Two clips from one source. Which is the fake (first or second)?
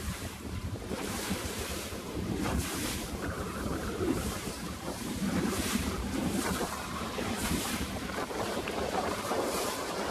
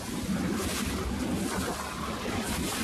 first